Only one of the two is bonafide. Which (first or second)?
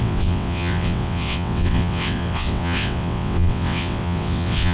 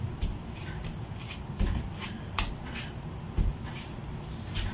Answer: second